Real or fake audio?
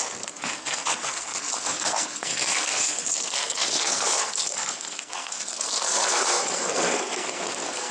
fake